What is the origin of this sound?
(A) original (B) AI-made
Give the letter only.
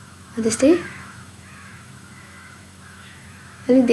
B